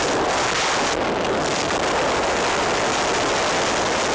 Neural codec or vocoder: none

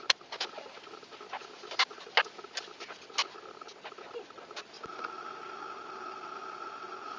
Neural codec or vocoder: none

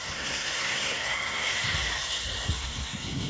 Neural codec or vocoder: codec, SNAC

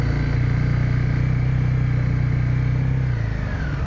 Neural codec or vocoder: none